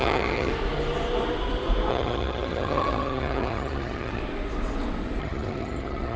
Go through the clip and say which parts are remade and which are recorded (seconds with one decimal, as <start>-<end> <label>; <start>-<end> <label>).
0.0-0.5 remade; 0.5-1.9 recorded; 1.9-4.2 remade; 4.2-5.2 recorded; 5.2-6.2 remade